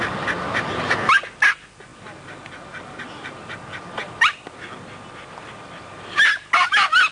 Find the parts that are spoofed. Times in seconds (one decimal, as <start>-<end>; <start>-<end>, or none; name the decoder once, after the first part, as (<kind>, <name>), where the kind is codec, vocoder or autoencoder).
none

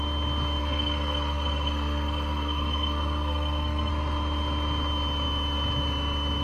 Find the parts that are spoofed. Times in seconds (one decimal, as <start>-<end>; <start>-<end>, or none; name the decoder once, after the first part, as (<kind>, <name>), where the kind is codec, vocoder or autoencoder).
0.6-3.9 (codec, SNAC)

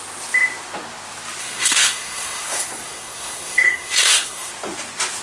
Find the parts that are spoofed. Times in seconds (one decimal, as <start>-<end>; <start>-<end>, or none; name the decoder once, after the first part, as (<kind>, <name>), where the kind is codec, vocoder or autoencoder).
1.4-4.5 (codec, SNAC)

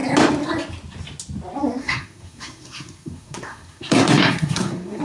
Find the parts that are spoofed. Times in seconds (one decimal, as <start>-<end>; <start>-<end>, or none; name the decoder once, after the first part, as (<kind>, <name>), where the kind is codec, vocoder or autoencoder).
1.8-5.0 (codec, SNAC)

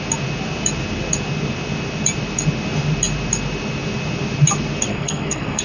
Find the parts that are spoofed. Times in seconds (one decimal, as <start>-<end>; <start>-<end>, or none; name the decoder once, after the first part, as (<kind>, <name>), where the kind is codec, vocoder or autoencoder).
4.9-5.6 (codec, SNAC)